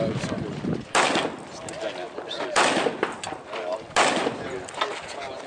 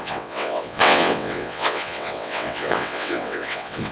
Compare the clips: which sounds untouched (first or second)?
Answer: first